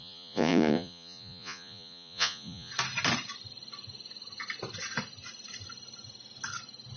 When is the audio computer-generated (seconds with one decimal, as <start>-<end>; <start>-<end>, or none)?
0.0-2.7